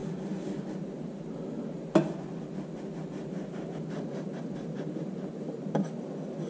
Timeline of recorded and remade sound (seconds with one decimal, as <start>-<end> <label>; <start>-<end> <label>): 0.0-6.5 recorded